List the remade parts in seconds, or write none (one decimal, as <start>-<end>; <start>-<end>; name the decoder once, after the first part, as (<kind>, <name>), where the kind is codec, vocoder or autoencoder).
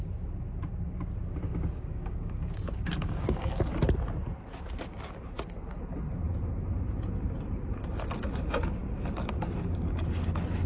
1.5-3.6 (codec, DAC)